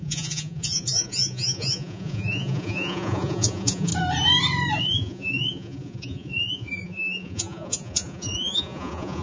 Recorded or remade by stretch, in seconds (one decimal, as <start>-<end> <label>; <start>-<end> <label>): 0.0-3.9 remade; 3.9-4.8 recorded; 4.8-9.2 remade